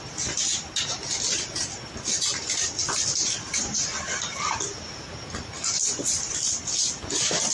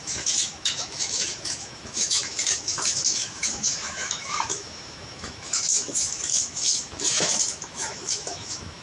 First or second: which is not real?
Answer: second